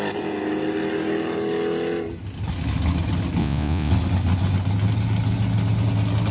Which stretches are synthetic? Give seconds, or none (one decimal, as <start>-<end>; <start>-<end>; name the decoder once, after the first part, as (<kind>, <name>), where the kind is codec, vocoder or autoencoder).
3.4-3.9 (vocoder, Vocos)